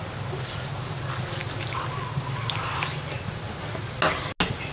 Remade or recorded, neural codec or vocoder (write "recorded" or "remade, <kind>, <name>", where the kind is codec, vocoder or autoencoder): recorded